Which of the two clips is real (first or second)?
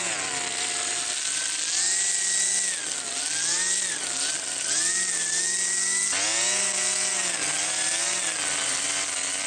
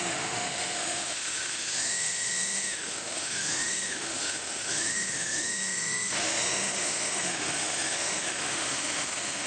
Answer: first